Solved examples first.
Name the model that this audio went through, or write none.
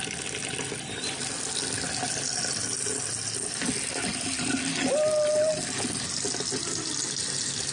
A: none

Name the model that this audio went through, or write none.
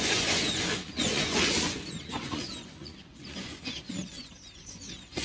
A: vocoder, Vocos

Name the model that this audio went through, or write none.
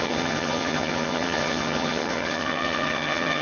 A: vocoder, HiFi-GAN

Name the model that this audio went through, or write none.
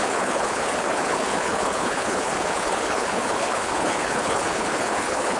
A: codec, HILCodec